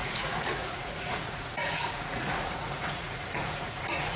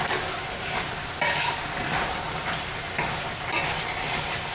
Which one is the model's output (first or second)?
first